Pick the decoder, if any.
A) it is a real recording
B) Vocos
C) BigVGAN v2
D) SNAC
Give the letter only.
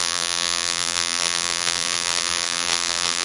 C